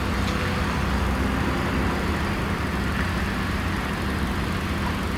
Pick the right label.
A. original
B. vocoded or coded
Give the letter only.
A